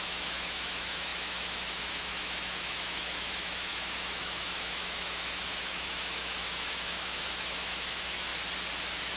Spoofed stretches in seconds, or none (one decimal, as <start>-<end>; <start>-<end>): 0.0-8.3